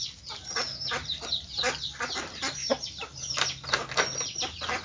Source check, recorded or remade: recorded